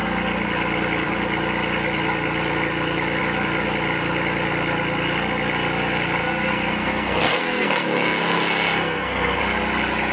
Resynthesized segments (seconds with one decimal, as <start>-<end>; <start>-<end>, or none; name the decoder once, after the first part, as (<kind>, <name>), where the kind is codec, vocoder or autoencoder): 6.2-9.4 (codec, SNAC)